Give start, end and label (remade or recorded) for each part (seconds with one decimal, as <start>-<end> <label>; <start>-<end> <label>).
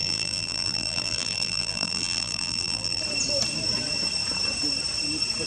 0.0-3.0 remade; 3.0-5.5 recorded